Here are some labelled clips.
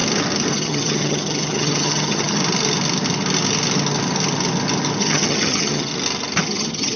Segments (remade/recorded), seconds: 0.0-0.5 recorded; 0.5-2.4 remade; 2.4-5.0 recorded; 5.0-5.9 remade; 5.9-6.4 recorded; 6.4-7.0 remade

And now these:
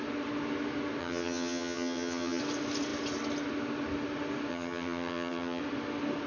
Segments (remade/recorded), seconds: 0.0-1.0 recorded; 1.0-2.4 remade; 2.4-4.5 recorded; 4.5-5.6 remade; 5.6-6.3 recorded